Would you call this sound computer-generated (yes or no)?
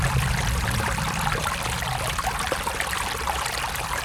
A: yes